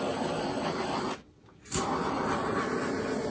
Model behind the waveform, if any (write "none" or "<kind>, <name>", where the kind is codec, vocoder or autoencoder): none